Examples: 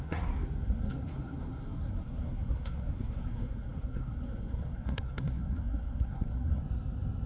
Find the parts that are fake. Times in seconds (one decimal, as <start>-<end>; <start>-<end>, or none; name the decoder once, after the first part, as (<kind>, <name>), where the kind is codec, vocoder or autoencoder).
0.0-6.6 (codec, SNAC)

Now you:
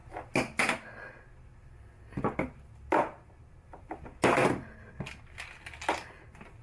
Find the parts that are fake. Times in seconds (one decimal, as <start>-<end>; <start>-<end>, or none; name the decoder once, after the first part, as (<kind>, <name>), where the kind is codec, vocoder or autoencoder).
none

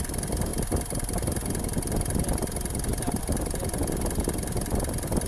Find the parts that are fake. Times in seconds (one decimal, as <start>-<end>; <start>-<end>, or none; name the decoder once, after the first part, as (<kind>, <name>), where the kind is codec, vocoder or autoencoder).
none